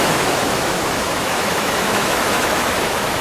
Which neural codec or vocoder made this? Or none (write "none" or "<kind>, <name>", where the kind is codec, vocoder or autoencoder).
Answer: autoencoder, DAC-VAE